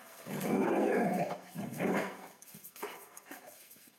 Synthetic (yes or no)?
yes